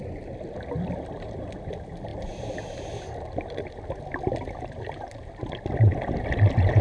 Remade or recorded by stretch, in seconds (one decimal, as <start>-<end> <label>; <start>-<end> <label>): 0.0-6.8 recorded